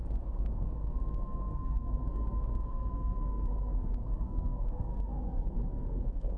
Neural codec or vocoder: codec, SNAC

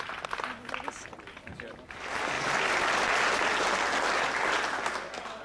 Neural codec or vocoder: none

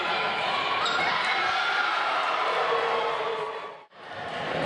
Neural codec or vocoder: vocoder, BigVGAN v2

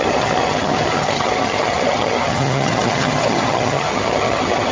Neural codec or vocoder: vocoder, HiFi-GAN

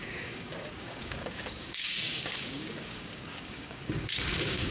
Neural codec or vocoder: codec, DAC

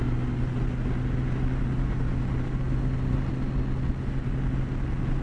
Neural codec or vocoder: none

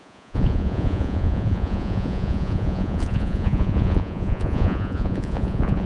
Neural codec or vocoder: vocoder, Vocos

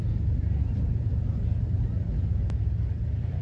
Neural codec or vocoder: none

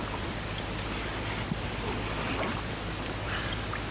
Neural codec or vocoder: none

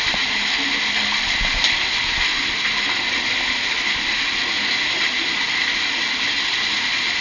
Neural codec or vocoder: none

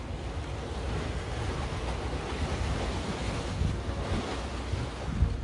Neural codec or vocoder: none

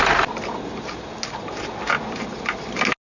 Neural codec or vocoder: none